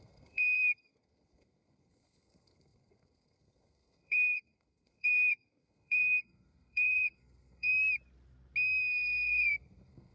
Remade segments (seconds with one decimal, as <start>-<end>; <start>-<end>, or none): 0.0-7.7; 8.9-10.1